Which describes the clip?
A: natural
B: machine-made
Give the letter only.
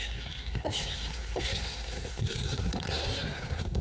B